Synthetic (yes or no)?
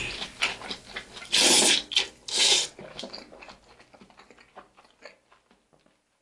no